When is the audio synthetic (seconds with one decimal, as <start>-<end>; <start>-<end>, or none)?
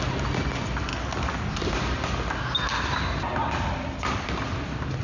none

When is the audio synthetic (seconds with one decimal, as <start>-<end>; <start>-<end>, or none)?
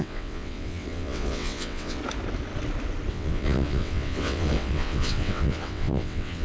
0.0-2.0; 3.1-6.4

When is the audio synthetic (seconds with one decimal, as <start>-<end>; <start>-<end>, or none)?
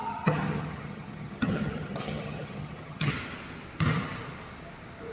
0.0-3.1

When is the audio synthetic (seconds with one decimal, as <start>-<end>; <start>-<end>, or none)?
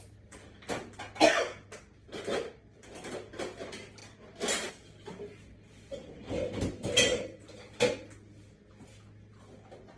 none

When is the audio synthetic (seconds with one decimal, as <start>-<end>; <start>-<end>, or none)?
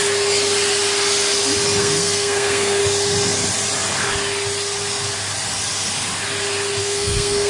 1.8-2.8; 6.8-7.5